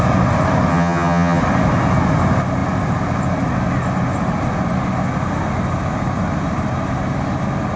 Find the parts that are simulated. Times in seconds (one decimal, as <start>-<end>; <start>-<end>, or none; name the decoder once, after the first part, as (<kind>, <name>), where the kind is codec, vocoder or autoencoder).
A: 0.7-1.4 (vocoder, HiFi-GAN)